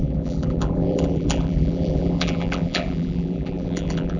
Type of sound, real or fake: fake